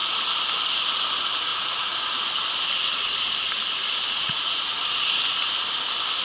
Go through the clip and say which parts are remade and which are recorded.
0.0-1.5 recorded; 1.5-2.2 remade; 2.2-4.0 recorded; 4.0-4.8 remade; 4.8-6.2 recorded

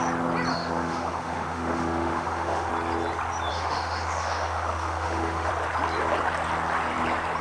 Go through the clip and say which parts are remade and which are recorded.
0.0-0.5 recorded; 0.5-2.7 remade; 2.7-3.5 recorded; 3.5-5.5 remade; 5.5-7.4 recorded

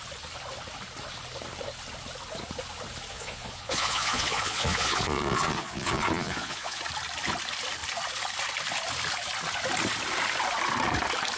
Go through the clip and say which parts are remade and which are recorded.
0.0-3.1 recorded; 3.1-6.8 remade; 6.8-11.4 recorded

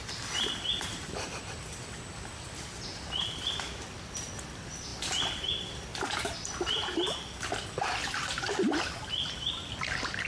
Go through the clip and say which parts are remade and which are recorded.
0.0-10.3 recorded

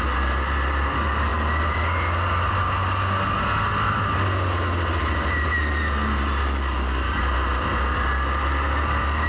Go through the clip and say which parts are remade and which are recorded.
0.0-9.3 recorded

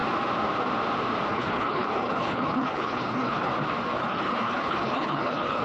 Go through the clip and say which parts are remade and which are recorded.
0.0-1.3 recorded; 1.3-3.5 remade; 3.5-4.0 recorded; 4.0-5.6 remade

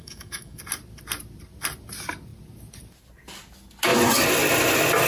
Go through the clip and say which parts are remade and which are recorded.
0.0-0.6 remade; 0.6-5.1 recorded